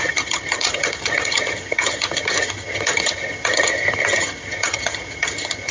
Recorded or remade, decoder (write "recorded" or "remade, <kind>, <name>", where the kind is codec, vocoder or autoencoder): remade, vocoder, HiFi-GAN